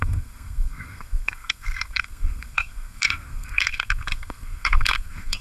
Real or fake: fake